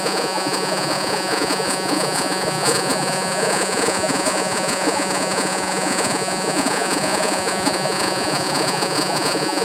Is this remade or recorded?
remade